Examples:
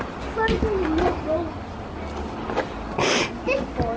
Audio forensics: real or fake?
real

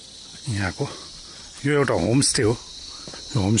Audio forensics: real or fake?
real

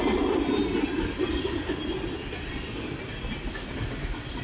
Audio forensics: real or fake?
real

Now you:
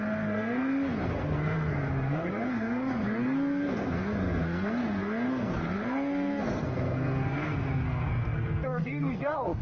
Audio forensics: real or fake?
fake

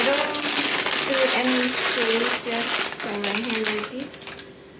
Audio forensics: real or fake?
real